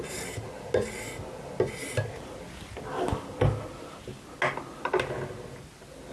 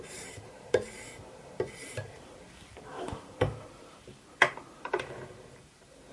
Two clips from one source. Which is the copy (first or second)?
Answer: second